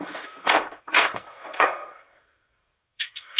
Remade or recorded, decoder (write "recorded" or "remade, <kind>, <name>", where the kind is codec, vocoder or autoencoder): remade, codec, SNAC